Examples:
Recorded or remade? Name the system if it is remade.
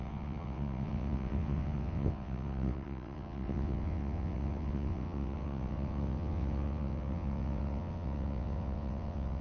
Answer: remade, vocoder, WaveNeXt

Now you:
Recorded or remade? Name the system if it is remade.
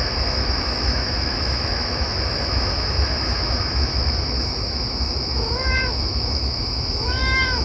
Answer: remade, autoencoder, DAC-VAE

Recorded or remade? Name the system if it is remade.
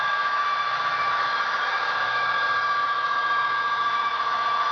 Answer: remade, autoencoder, DAC-VAE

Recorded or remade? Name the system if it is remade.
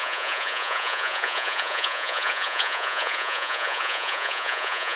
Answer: remade, vocoder, Vocos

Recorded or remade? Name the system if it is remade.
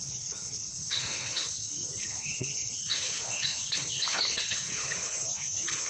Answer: remade, codec, HILCodec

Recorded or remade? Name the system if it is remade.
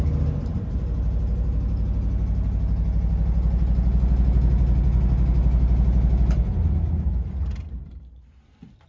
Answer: recorded